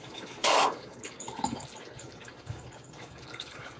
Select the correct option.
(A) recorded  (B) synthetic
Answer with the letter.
B